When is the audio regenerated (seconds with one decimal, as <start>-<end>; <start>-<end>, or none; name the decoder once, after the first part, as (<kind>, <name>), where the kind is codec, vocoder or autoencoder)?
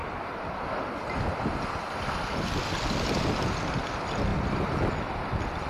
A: none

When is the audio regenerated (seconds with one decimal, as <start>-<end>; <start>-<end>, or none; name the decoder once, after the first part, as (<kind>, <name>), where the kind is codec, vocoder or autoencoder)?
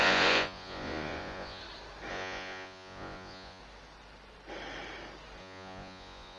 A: 0.0-1.6 (vocoder, Vocos); 2.1-3.6; 5.4-6.4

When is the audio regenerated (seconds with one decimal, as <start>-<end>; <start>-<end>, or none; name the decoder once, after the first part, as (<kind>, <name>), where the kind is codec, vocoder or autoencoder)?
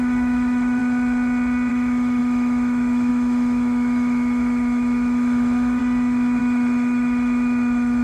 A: 0.0-0.8 (autoencoder, DAC-VAE); 1.7-5.8; 6.4-8.0